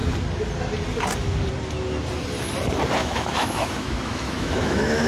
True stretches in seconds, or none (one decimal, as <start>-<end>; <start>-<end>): 0.0-3.0